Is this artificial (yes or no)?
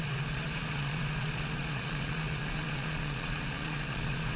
yes